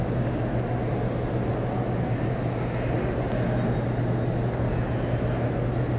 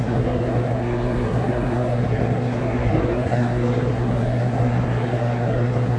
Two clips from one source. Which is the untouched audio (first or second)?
first